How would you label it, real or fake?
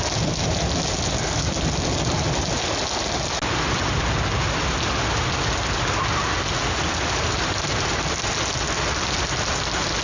real